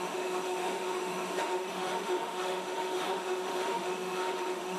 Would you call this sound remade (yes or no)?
yes